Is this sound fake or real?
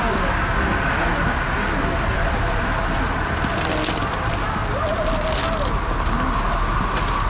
real